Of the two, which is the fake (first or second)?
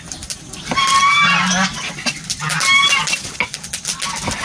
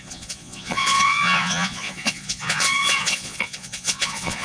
second